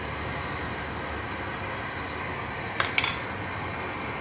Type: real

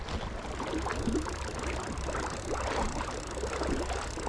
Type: real